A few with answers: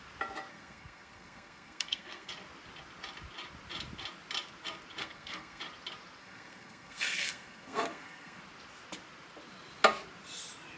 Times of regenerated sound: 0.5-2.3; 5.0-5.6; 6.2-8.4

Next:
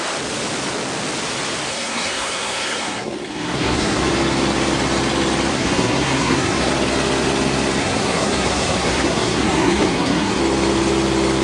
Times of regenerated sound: 1.7-4.1; 5.5-6.7; 7.8-10.4

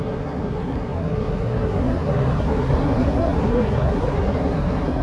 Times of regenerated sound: 0.0-5.0

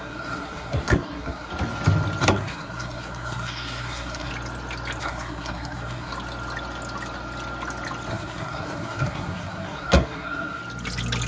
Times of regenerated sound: 0.0-1.5; 2.2-4.3; 5.0-6.1; 8.1-10.6

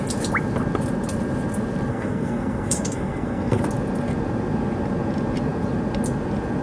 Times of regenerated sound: 1.9-3.6

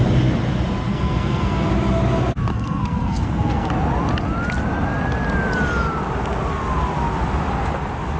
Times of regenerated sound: 0.9-1.7; 2.5-3.7

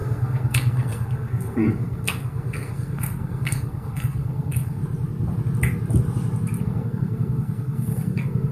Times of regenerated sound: 0.0-4.8; 6.6-8.5

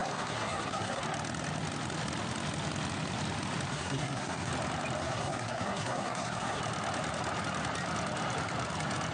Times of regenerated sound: 0.0-1.0; 3.7-4.5; 5.0-6.6